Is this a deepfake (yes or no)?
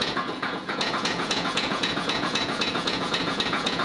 yes